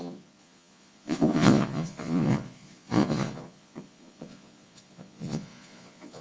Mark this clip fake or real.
fake